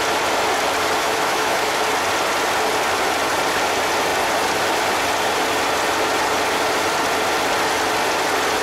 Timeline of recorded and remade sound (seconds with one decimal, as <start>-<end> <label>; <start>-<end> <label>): 0.0-1.0 recorded; 1.0-1.8 remade; 1.8-8.6 recorded